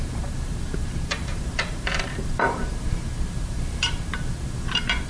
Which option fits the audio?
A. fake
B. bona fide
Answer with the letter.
A